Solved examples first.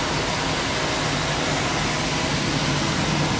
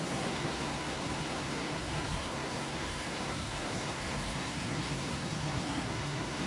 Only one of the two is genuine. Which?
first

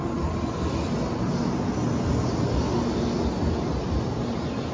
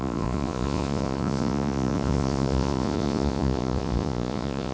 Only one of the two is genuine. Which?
first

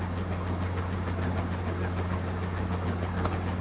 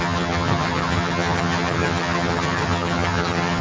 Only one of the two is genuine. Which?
first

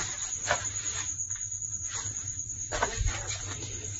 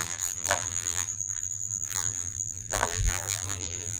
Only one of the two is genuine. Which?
first